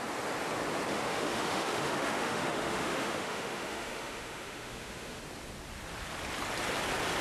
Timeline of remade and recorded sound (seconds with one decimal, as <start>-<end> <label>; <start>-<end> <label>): 0.0-0.9 recorded; 0.9-5.2 remade; 5.2-7.2 recorded